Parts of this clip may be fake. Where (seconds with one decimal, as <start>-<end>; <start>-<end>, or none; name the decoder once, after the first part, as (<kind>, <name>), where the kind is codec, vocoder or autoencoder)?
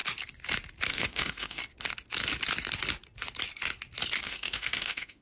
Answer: 0.9-1.6 (autoencoder, DAC-VAE); 4.2-5.2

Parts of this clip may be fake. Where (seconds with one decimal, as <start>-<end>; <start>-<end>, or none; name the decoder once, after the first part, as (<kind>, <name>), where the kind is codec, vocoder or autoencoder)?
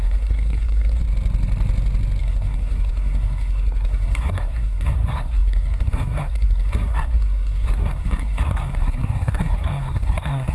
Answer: 0.0-1.0 (codec, SNAC); 2.2-10.5